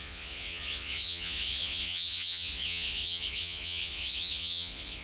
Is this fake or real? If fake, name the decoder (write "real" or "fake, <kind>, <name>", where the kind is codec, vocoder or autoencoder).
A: fake, vocoder, Vocos